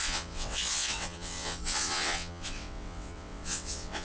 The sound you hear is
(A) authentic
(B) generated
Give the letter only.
B